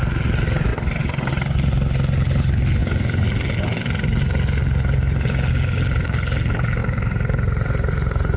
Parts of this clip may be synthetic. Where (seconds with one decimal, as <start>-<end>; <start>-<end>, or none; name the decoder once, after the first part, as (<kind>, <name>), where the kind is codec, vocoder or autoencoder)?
6.8-8.4 (vocoder, BigVGAN v2)